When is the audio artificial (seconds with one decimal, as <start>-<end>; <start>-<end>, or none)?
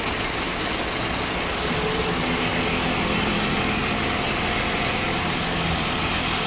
none